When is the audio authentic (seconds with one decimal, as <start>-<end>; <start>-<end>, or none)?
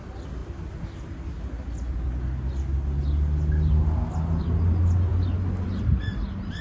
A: 0.0-6.6